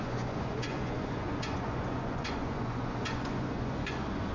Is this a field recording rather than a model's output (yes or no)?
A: no